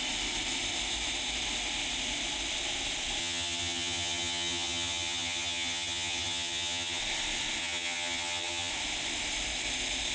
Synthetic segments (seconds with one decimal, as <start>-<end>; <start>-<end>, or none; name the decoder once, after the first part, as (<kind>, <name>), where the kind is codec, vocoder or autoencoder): 3.2-7.0 (vocoder, HiFi-GAN); 7.6-8.7

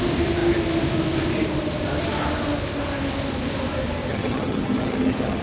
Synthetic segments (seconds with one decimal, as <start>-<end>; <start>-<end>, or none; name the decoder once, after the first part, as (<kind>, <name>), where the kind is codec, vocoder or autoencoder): 4.1-5.4 (vocoder, HiFi-GAN)

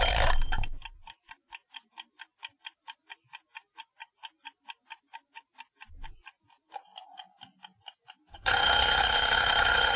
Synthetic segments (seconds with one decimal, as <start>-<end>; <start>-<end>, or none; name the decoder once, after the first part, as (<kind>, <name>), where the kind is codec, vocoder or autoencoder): 8.3-10.0 (vocoder, HiFi-GAN)

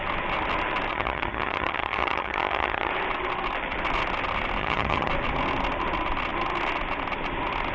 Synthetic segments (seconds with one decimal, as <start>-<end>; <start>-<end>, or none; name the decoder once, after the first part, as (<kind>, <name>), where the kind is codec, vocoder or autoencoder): 0.9-2.9 (vocoder, HiFi-GAN); 4.6-5.1

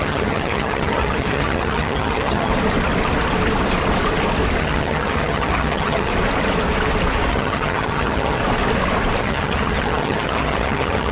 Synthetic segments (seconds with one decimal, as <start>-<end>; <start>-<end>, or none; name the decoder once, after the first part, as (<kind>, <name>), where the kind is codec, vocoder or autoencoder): 0.0-2.5 (vocoder, HiFi-GAN); 4.6-6.1; 7.3-8.4; 9.2-11.1